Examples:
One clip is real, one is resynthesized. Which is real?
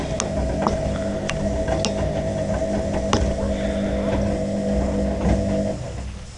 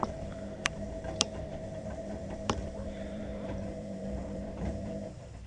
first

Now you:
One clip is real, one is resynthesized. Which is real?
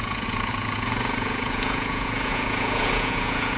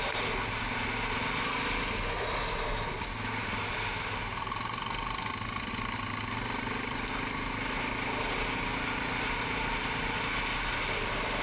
second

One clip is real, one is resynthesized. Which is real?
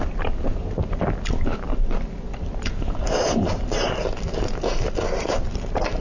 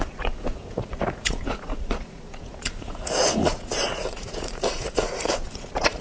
first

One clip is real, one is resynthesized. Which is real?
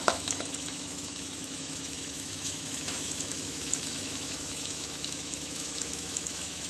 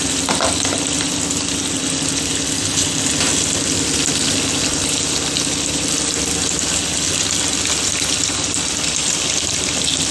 second